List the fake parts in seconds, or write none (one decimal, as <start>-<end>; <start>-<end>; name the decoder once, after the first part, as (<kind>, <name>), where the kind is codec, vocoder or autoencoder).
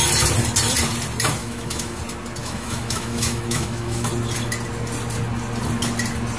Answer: 1.4-2.0 (autoencoder, DAC-VAE); 2.4-4.1